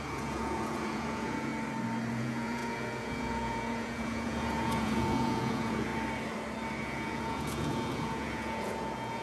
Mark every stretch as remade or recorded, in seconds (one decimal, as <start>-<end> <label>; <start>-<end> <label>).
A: 0.0-1.5 remade; 1.5-2.1 recorded; 2.1-5.9 remade; 5.9-6.8 recorded; 6.8-9.2 remade

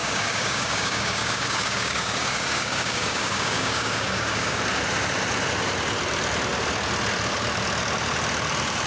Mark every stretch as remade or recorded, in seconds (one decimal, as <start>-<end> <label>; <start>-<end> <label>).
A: 0.0-4.6 remade; 4.6-8.9 recorded

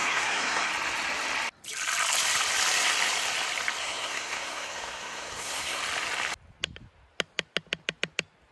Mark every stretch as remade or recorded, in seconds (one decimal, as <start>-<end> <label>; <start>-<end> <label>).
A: 0.0-0.7 remade; 0.7-3.8 recorded; 3.8-5.8 remade; 5.8-8.5 recorded

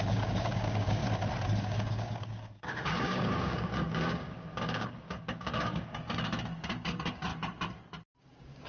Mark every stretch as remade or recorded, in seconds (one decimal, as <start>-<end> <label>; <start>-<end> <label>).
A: 0.0-1.0 remade; 1.0-1.6 recorded; 1.6-7.3 remade; 7.3-8.2 recorded; 8.2-8.7 remade

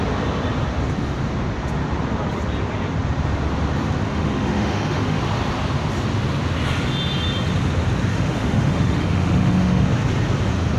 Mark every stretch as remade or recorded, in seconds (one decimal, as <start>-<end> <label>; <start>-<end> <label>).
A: 0.0-4.1 recorded; 4.1-5.2 remade; 5.2-8.1 recorded; 8.1-9.9 remade; 9.9-10.8 recorded